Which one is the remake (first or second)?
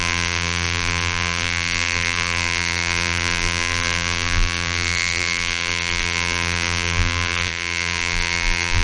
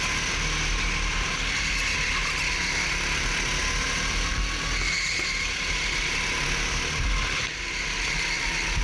first